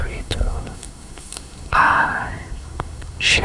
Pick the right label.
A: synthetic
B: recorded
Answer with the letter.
A